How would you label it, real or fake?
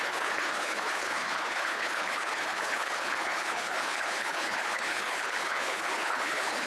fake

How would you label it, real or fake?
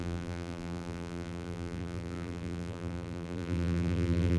fake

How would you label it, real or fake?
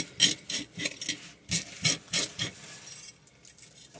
real